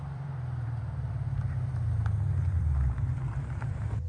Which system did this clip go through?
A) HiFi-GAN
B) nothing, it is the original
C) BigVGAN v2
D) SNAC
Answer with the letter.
C